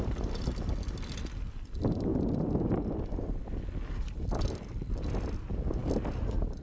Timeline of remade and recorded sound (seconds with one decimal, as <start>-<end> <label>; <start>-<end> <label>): 0.0-6.6 recorded